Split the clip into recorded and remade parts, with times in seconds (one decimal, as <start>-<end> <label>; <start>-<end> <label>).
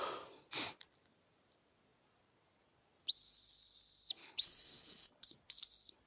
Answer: 0.0-4.2 recorded; 4.2-5.2 remade; 5.2-6.1 recorded